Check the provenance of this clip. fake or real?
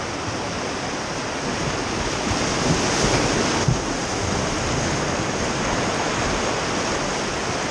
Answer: real